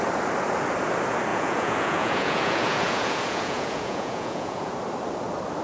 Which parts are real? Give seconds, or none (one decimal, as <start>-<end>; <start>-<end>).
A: 0.0-1.3; 4.7-5.6